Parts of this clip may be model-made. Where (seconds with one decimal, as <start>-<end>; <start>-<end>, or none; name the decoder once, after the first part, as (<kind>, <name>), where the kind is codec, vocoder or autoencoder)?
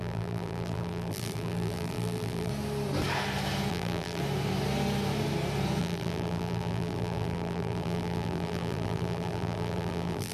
0.0-2.5 (vocoder, BigVGAN v2); 3.7-4.2; 5.8-10.3